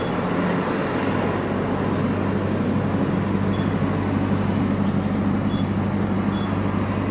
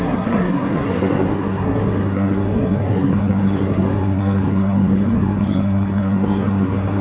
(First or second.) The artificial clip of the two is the second